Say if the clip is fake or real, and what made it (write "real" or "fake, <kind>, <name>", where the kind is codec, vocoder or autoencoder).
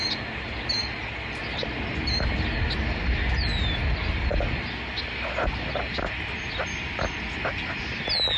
real